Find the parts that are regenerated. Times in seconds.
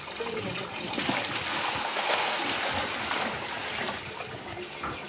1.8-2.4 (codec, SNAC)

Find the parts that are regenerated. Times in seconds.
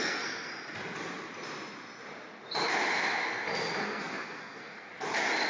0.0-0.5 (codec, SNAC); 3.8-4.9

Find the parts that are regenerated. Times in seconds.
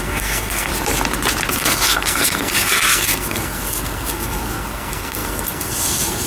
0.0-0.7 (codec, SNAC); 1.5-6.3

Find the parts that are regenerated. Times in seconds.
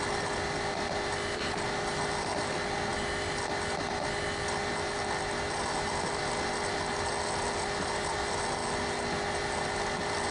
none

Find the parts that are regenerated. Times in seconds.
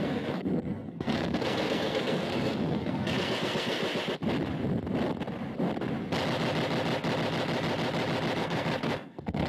0.0-3.8 (codec, SNAC); 8.4-9.5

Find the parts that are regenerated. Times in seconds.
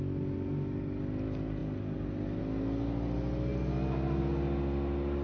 none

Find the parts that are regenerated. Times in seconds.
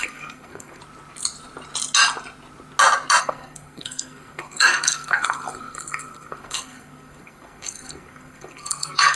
0.0-0.8 (codec, SNAC); 3.2-9.2